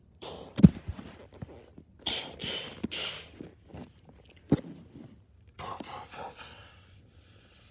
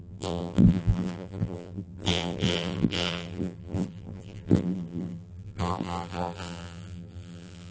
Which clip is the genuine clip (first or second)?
first